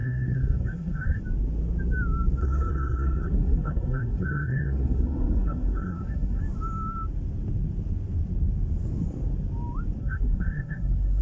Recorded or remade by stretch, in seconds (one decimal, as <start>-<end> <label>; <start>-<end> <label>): 0.0-1.2 remade; 1.2-2.4 recorded; 2.4-6.4 remade; 6.4-10.0 recorded; 10.0-11.2 remade